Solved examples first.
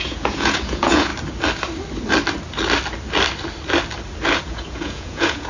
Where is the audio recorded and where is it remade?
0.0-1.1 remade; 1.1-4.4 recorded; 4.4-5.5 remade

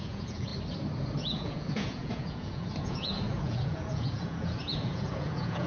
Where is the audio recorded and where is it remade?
0.0-0.5 remade; 0.5-1.2 recorded; 1.2-5.7 remade

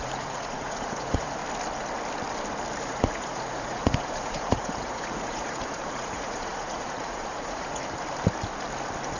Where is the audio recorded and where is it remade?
0.0-1.4 remade; 1.4-2.8 recorded; 2.8-7.8 remade; 7.8-9.2 recorded